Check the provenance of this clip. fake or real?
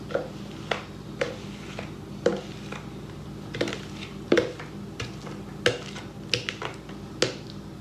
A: real